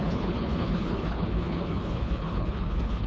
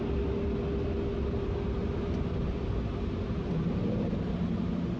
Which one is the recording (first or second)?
second